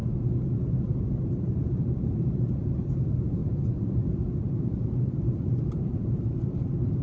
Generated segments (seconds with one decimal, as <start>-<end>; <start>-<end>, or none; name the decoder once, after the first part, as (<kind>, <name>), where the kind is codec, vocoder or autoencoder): 1.2-7.0 (vocoder, BigVGAN v2)